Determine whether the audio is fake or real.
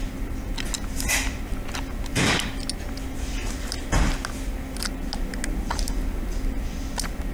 real